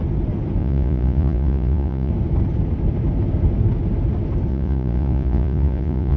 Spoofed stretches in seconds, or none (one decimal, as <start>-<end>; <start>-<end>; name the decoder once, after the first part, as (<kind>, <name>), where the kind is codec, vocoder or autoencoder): 0.6-2.1 (vocoder, Vocos); 4.5-6.2